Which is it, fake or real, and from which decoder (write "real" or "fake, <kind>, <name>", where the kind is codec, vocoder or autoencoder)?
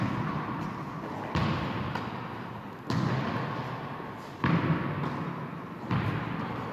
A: real